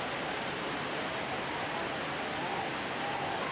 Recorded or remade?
recorded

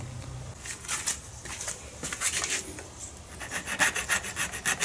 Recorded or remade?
recorded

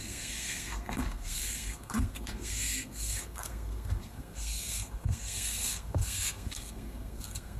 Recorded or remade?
remade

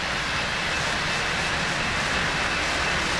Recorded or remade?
recorded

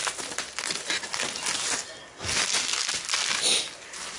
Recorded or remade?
recorded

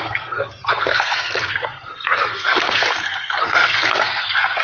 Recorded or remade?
remade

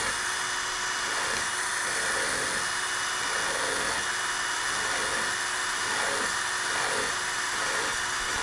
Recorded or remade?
recorded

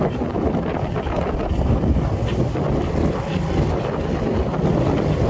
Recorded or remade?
recorded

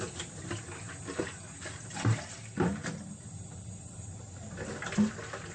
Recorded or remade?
recorded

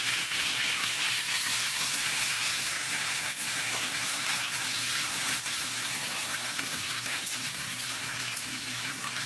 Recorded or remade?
remade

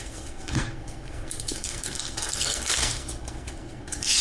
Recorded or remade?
remade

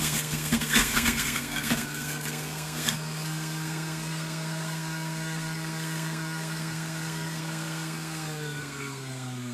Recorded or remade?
remade